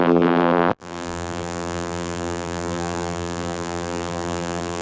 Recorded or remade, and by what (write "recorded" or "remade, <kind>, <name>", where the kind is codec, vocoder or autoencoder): remade, vocoder, BigVGAN v2